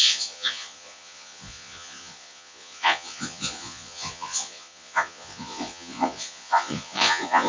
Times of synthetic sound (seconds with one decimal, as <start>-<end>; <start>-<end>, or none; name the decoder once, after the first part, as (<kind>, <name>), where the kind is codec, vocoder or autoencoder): 0.0-7.5 (vocoder, Vocos)